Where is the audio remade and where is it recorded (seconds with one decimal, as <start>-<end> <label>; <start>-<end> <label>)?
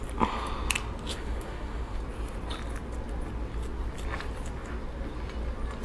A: 0.0-1.1 recorded; 1.1-2.0 remade; 2.0-5.8 recorded